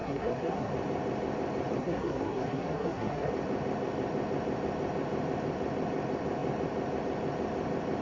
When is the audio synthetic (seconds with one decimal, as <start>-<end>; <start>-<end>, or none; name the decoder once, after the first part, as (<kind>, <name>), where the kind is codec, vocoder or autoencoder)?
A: 0.0-0.7 (codec, SNAC); 1.8-3.3